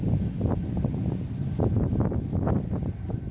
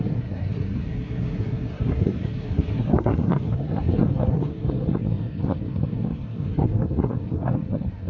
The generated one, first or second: second